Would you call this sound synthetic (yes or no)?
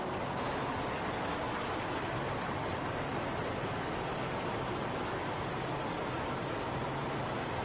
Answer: no